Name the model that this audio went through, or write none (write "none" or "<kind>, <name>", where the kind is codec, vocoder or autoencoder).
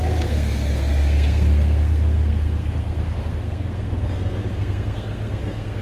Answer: codec, SNAC